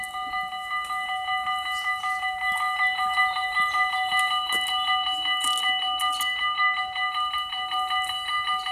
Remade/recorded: recorded